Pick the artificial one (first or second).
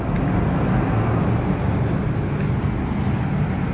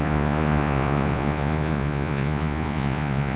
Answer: second